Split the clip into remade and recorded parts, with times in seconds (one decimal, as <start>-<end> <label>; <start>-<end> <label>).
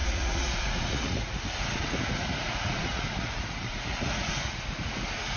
0.0-5.4 remade